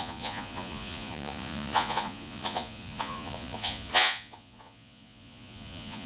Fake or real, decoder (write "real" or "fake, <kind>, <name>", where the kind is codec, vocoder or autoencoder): fake, vocoder, Vocos